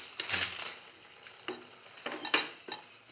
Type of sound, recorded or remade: recorded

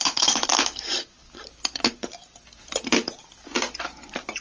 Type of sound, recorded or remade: remade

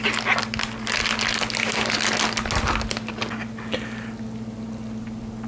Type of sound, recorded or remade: recorded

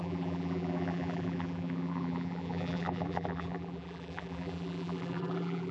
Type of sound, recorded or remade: remade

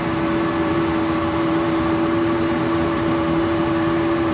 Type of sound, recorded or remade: remade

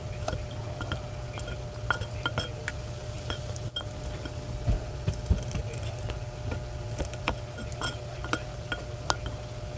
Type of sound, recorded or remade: recorded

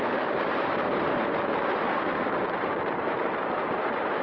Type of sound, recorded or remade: remade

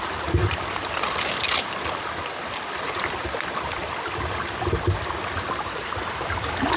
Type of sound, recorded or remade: remade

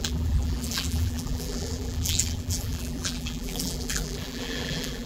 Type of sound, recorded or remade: remade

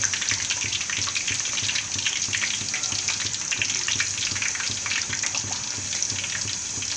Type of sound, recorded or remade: recorded